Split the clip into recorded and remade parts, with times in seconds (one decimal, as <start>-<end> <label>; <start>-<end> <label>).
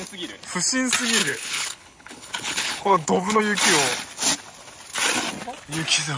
0.0-1.2 recorded; 1.2-3.4 remade; 3.4-6.2 recorded